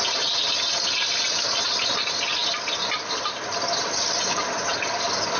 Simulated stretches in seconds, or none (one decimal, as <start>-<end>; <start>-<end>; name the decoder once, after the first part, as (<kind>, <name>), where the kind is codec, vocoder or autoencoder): none